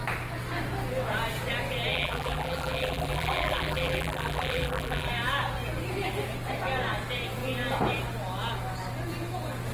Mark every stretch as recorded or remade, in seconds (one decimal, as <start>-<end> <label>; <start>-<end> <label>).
0.0-1.9 recorded; 1.9-5.1 remade; 5.1-9.7 recorded